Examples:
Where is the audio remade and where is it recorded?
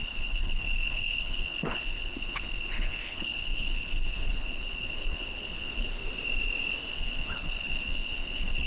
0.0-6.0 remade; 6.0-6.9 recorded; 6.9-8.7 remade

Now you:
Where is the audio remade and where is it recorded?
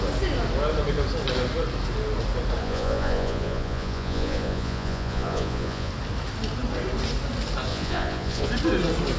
0.0-2.6 recorded; 2.6-5.9 remade; 5.9-7.7 recorded; 7.7-8.5 remade; 8.5-9.2 recorded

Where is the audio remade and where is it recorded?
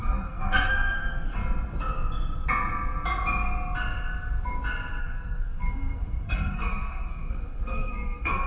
0.0-1.4 remade; 1.4-5.0 recorded; 5.0-8.5 remade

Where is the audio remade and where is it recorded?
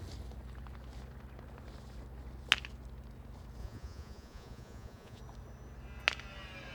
0.0-3.6 recorded; 3.6-5.2 remade; 5.2-6.7 recorded